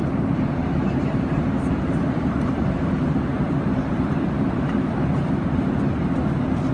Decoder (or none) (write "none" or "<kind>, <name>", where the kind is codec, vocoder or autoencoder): vocoder, BigVGAN v2